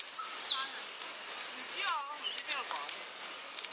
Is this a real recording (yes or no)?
yes